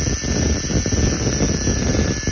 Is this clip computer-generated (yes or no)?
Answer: no